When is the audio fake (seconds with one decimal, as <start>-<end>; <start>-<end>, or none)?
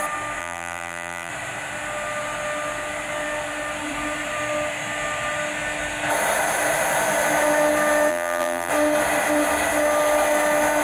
0.4-1.3; 8.1-8.7